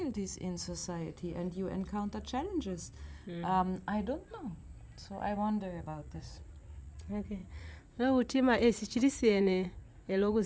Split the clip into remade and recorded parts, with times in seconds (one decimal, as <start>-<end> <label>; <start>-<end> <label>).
0.0-0.8 remade; 0.8-5.8 recorded; 5.8-10.5 remade